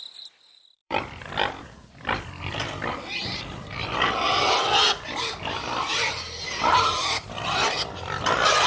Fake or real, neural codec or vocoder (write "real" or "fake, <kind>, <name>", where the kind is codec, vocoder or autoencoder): fake, vocoder, BigVGAN v2